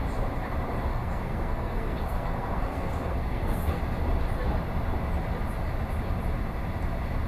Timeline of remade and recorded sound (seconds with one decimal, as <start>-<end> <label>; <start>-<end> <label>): 0.0-0.9 recorded; 0.9-3.8 remade; 3.8-7.3 recorded